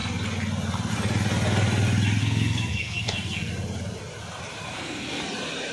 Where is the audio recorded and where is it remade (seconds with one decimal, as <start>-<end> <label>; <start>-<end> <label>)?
0.0-2.2 recorded; 2.2-3.5 remade; 3.5-4.6 recorded; 4.6-5.2 remade; 5.2-5.7 recorded